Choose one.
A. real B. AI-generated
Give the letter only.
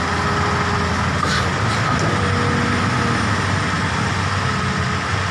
A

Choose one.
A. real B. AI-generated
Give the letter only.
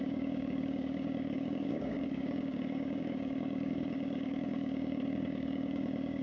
B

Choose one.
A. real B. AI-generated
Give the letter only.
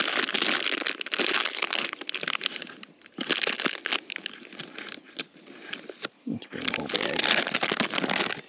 A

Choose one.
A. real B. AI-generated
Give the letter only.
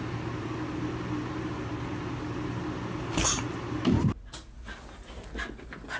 A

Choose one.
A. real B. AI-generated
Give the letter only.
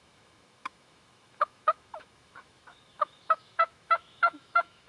B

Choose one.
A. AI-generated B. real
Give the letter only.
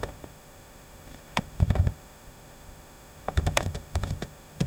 A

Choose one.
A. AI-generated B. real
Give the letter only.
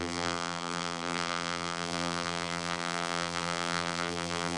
A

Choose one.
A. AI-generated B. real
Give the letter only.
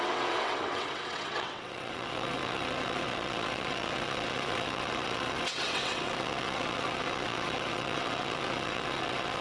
A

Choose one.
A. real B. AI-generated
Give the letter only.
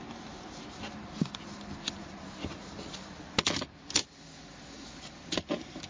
A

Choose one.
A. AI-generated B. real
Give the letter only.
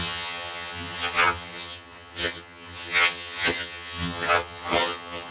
A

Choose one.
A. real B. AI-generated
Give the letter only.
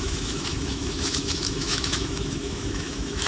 B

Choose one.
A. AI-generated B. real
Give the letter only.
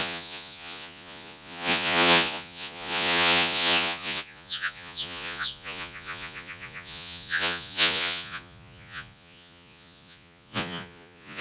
A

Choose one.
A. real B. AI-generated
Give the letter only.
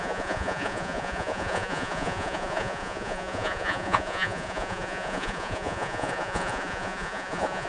B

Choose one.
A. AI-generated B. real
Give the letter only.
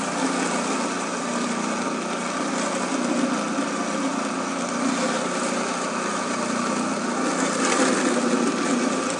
B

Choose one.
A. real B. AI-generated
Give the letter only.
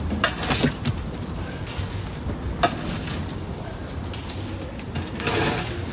A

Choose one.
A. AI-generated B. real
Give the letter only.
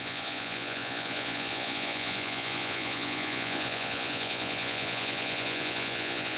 A